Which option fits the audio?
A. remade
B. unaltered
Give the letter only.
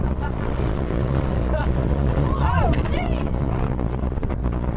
A